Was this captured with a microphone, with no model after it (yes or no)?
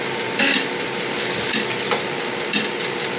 no